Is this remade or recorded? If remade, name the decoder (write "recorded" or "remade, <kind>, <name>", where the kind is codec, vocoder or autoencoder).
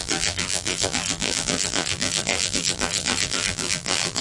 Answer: remade, vocoder, BigVGAN v2